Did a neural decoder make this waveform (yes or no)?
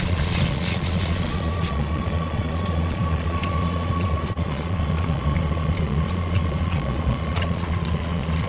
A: yes